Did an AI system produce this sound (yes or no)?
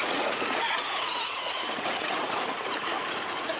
yes